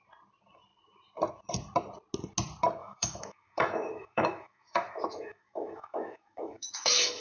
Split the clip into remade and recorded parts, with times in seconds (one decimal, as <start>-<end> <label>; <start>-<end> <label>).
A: 0.0-2.8 recorded; 2.8-7.2 remade

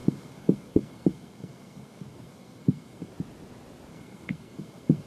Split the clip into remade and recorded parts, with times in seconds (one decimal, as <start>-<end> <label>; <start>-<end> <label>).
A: 0.0-3.1 remade; 3.1-3.9 recorded; 3.9-5.1 remade

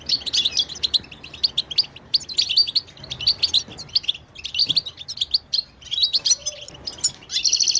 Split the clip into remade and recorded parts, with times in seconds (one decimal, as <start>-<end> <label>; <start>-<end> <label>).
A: 0.0-7.8 recorded

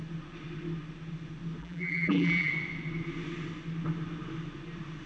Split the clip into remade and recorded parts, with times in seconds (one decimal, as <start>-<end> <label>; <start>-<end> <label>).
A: 0.0-1.6 recorded; 1.6-2.5 remade; 2.5-5.1 recorded

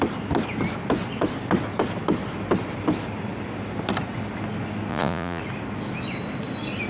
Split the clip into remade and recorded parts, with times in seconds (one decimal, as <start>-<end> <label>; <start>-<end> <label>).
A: 0.0-4.9 recorded; 4.9-5.4 remade; 5.4-6.9 recorded

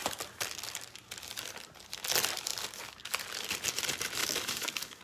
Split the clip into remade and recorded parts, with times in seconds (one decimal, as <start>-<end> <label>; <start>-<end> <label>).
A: 0.0-4.2 recorded; 4.2-5.0 remade

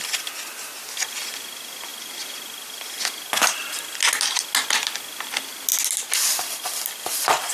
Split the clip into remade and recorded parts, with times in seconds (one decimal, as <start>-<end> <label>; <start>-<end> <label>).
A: 0.0-7.5 recorded